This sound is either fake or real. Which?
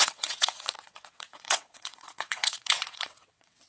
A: fake